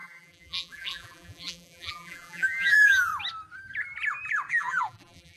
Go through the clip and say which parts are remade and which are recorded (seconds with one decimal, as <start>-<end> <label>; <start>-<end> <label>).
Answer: 0.0-3.1 remade; 3.1-4.5 recorded; 4.5-5.4 remade